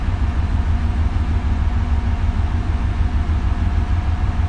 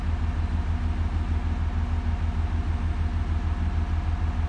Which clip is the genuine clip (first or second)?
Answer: second